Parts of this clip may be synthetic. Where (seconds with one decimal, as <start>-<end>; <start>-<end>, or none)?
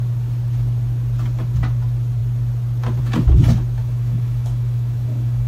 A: 3.8-5.5